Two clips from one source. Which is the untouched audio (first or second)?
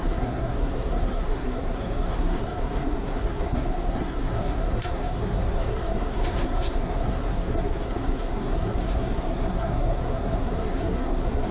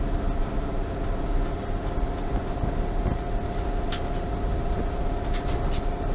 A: second